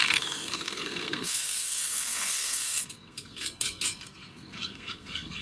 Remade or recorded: remade